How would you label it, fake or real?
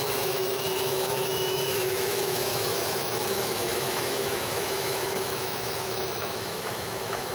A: fake